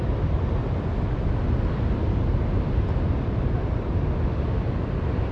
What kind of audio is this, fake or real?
real